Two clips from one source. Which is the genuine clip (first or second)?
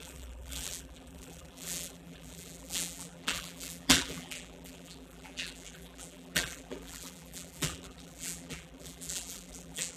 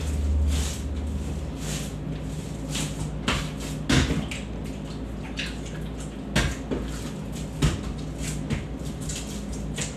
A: second